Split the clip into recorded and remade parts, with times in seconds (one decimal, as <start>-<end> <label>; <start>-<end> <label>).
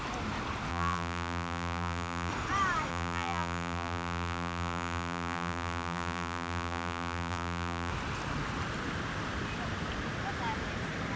0.0-0.7 recorded; 0.7-2.3 remade; 2.3-2.9 recorded; 2.9-7.9 remade; 7.9-11.2 recorded